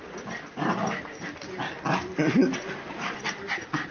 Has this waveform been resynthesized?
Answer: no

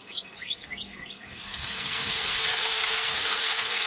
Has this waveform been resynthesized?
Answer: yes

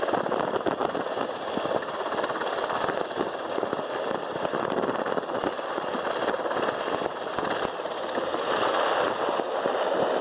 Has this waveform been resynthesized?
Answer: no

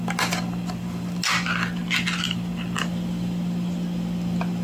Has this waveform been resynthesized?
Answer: no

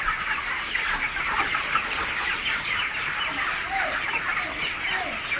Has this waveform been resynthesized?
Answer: no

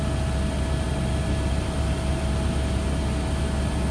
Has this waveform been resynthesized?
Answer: no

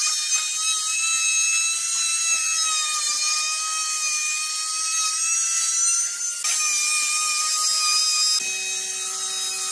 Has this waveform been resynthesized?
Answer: no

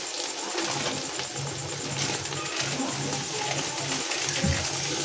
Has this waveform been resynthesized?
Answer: no